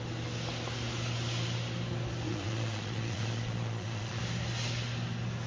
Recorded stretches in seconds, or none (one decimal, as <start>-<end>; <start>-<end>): 0.0-2.3; 4.2-5.5